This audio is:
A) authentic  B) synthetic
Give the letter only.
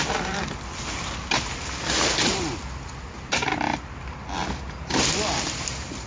A